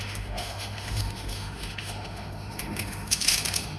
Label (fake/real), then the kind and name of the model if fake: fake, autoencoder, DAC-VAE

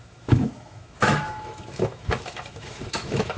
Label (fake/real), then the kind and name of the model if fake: fake, autoencoder, DAC-VAE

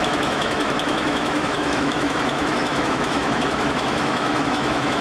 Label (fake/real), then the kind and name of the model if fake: fake, autoencoder, DAC-VAE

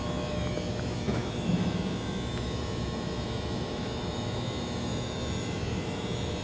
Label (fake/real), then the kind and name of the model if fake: fake, autoencoder, DAC-VAE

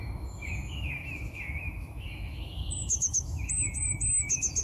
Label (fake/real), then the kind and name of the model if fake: fake, autoencoder, DAC-VAE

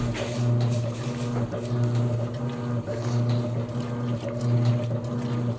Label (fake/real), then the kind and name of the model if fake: real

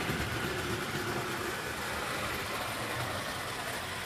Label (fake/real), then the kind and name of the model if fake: real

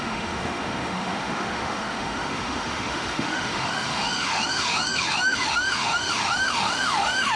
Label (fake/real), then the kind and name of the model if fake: fake, autoencoder, DAC-VAE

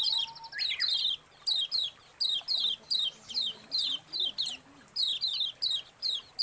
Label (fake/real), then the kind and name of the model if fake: real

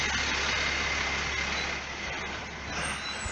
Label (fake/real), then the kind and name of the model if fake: real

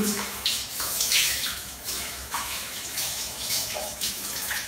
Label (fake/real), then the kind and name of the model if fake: fake, autoencoder, DAC-VAE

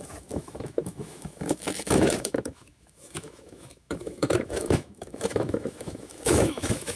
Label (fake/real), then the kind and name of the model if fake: fake, autoencoder, DAC-VAE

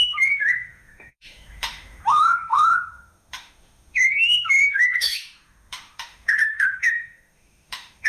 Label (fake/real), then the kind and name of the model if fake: fake, autoencoder, DAC-VAE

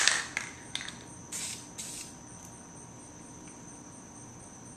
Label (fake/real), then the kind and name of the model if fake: real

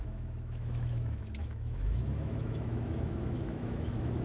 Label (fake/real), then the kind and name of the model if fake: fake, autoencoder, DAC-VAE